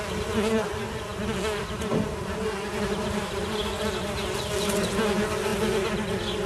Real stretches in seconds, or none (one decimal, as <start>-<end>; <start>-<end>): 0.0-6.5